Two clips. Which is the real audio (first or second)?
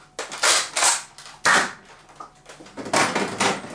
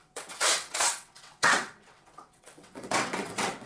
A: first